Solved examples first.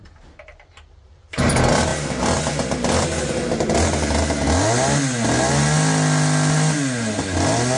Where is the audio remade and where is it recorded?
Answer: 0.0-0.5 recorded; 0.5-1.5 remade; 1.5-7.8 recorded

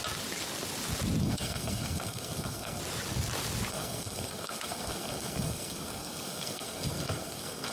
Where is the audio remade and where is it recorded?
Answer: 0.0-1.2 recorded; 1.2-2.8 remade; 2.8-3.7 recorded; 3.7-7.7 remade

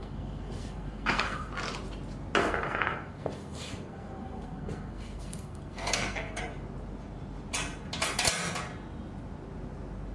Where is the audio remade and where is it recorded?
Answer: 0.0-1.5 remade; 1.5-2.4 recorded; 2.4-6.4 remade; 6.4-10.1 recorded

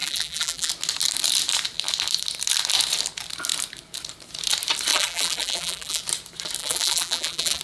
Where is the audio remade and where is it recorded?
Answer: 0.0-0.7 remade; 0.7-4.9 recorded; 4.9-6.0 remade; 6.0-6.6 recorded; 6.6-7.6 remade

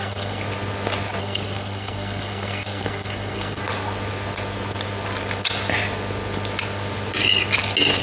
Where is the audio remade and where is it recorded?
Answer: 0.0-0.4 remade; 0.4-1.2 recorded; 1.2-3.6 remade; 3.6-8.0 recorded

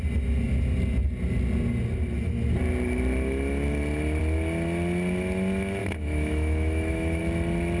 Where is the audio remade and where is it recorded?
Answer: 0.0-5.8 recorded; 5.8-7.2 remade; 7.2-7.8 recorded